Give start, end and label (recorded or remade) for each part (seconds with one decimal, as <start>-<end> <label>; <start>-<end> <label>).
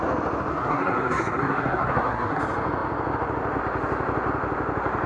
0.0-0.5 recorded; 0.5-2.4 remade; 2.4-5.1 recorded